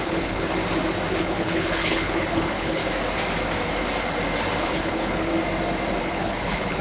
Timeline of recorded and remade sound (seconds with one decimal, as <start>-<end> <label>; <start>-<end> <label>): 0.0-0.5 remade; 0.5-1.2 recorded; 1.2-2.8 remade; 2.8-4.6 recorded; 4.6-5.3 remade; 5.3-6.0 recorded; 6.0-6.8 remade

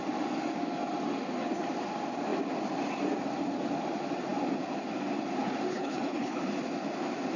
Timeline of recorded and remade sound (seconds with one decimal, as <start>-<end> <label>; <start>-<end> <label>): 0.0-5.7 recorded; 5.7-6.3 remade; 6.3-7.4 recorded

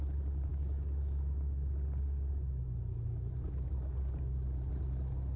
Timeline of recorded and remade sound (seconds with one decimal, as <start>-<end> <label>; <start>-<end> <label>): 0.0-5.4 recorded

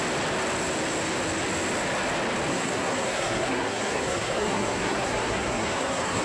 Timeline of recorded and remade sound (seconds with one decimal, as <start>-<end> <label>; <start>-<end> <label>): 0.0-2.5 recorded; 2.5-6.2 remade

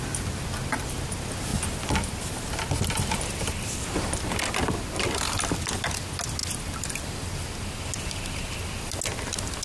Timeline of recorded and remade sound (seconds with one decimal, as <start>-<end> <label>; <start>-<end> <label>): 0.0-9.6 recorded